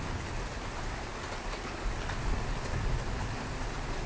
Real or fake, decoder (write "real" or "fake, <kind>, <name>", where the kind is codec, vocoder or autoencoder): real